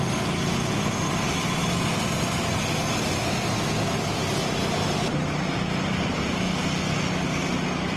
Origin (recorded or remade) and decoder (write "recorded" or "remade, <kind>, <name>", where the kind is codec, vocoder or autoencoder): recorded